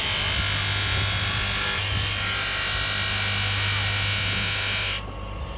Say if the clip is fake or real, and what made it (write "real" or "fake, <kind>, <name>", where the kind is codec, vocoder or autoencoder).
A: real